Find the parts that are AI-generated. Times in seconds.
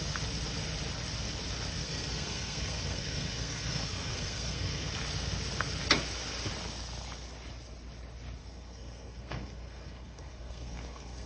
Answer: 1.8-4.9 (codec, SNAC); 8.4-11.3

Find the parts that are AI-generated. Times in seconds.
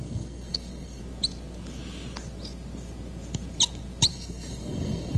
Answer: 0.0-1.0 (codec, SNAC); 4.1-5.2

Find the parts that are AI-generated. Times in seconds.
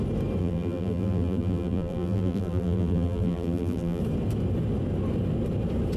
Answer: 0.4-4.0 (vocoder, BigVGAN v2)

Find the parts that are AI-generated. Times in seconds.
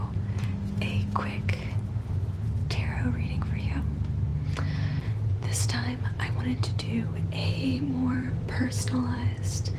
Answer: 2.6-3.4 (vocoder, BigVGAN v2); 7.4-9.8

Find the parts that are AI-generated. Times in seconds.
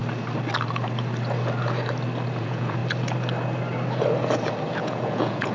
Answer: 2.4-2.8 (vocoder, Vocos); 4.8-5.5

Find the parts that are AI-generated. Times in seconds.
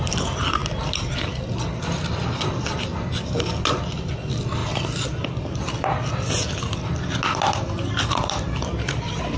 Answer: 0.0-4.6 (vocoder, BigVGAN v2); 7.9-9.4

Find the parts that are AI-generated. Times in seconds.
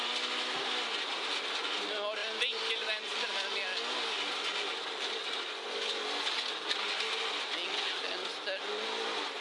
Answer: none